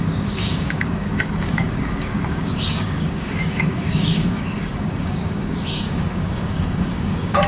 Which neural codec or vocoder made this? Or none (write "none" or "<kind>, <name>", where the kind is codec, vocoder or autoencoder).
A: codec, DAC